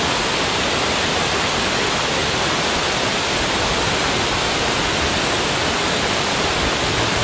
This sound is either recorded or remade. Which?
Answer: recorded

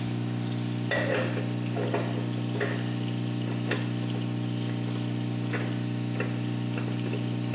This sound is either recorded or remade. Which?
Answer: recorded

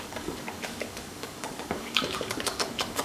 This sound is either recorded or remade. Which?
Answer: remade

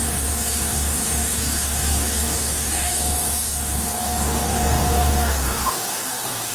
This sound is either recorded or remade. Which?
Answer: remade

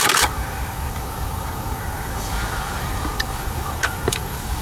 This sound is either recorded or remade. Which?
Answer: remade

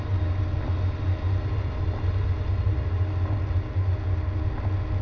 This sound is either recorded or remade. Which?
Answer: recorded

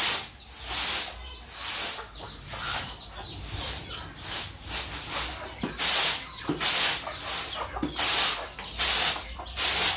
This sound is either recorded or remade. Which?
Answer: recorded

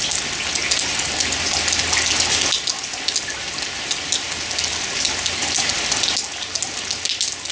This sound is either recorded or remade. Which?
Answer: recorded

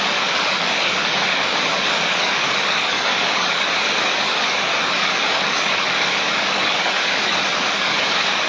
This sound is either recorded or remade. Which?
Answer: remade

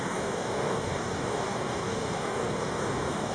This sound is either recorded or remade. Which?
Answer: remade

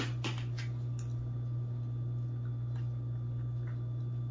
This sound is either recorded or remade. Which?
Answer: recorded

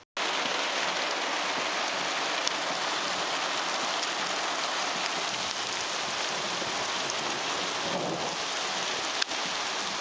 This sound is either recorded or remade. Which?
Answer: recorded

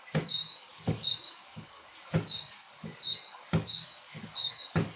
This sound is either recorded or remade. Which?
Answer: remade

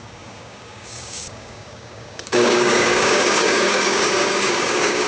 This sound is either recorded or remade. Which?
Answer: remade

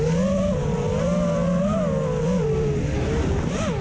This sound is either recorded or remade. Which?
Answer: recorded